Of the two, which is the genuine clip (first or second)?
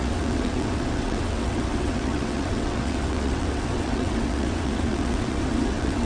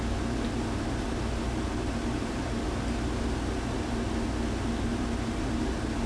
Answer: second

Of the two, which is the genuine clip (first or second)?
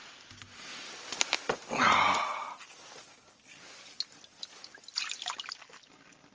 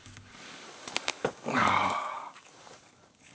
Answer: first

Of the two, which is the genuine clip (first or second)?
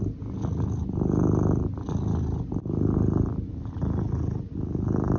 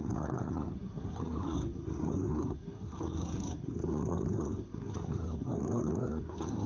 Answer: first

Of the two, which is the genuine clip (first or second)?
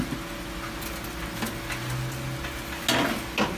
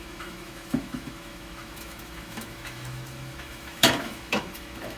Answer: first